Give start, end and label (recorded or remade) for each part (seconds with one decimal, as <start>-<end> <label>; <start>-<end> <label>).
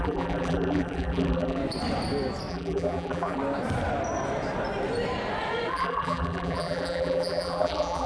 0.0-1.6 remade; 1.6-2.5 recorded; 2.5-3.4 remade; 3.4-5.7 recorded; 5.7-8.1 remade